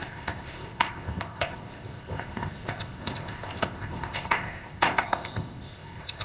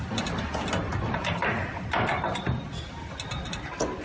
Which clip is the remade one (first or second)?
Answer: first